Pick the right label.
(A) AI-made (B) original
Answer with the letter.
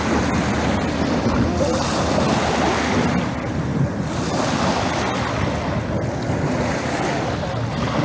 B